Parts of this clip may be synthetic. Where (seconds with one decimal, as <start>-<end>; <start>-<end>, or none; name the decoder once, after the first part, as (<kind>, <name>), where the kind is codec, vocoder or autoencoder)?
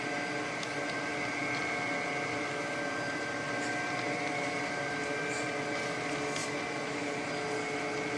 none